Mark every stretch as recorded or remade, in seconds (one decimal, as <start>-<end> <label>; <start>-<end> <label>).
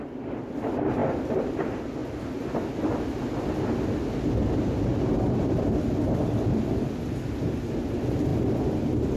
0.0-9.2 recorded